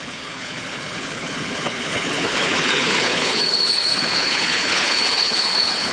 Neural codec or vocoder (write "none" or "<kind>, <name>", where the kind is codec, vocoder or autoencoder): codec, HILCodec